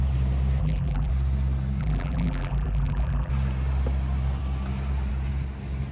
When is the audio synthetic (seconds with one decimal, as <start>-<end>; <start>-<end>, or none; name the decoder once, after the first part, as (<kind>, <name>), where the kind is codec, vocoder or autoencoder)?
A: 0.6-1.1 (vocoder, BigVGAN v2); 1.8-3.3